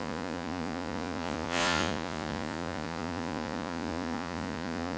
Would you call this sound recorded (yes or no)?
no